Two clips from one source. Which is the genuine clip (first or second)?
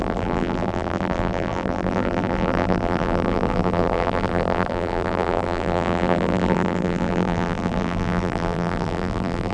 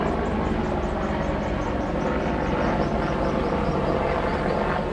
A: second